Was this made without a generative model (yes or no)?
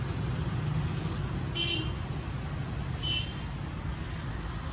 yes